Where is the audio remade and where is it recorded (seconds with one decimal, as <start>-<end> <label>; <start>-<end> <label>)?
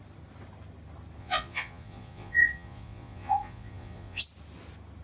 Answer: 0.0-1.2 recorded; 1.2-4.2 remade; 4.2-5.0 recorded